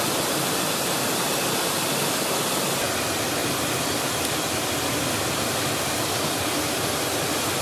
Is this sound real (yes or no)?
yes